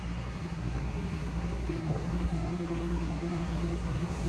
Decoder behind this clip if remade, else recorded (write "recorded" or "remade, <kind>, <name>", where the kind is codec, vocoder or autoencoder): remade, codec, SNAC